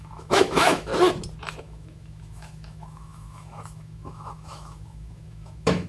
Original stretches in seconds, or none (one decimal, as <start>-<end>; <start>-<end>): 0.9-1.6